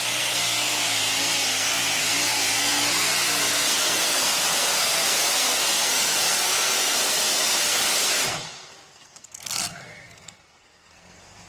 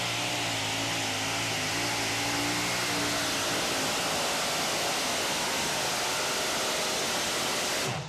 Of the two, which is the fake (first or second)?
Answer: first